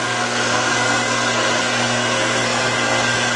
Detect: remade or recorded remade